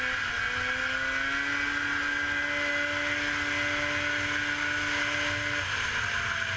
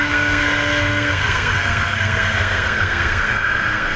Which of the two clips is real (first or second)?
first